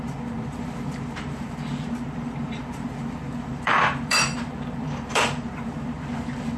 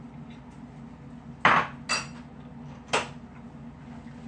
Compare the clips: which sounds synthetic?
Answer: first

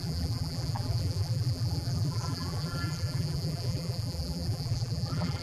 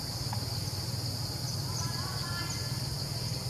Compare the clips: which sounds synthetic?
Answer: first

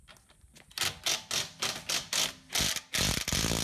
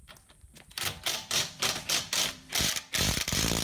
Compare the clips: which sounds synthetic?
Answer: second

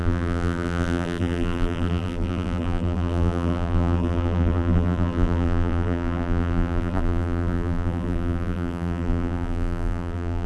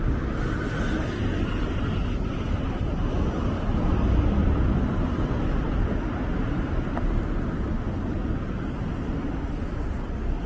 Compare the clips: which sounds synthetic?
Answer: first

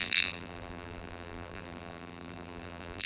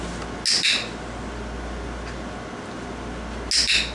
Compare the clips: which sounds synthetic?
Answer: first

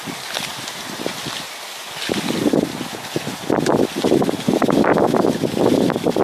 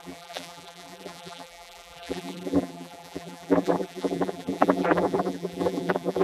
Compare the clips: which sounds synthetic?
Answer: second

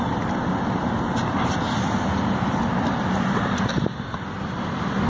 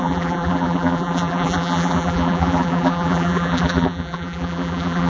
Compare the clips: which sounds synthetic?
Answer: second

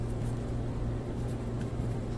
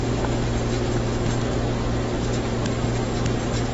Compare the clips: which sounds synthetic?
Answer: first